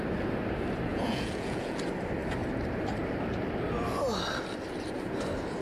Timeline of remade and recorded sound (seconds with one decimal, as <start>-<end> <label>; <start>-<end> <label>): 0.0-0.9 recorded; 0.9-1.8 remade; 1.8-5.6 recorded